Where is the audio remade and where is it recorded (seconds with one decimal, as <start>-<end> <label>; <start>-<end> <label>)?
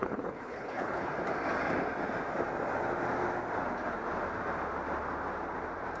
0.0-1.1 remade; 1.1-6.0 recorded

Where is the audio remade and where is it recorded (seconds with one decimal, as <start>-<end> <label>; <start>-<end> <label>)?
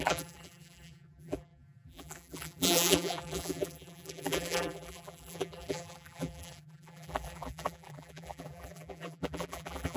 0.0-10.0 remade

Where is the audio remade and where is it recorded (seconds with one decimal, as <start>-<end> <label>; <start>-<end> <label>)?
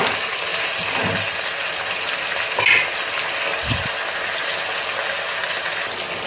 0.0-6.3 recorded